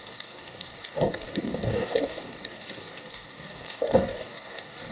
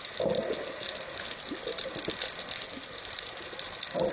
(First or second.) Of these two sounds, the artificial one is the first